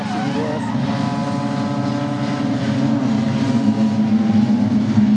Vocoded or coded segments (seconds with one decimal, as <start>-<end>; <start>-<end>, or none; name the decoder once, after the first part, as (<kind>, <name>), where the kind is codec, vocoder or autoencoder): none